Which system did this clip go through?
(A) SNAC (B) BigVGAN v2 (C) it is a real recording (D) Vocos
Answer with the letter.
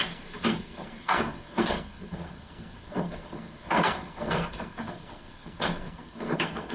A